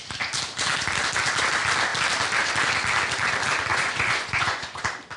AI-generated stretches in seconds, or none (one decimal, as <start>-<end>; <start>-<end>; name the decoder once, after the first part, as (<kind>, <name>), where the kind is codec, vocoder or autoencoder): 3.7-4.8 (vocoder, Vocos)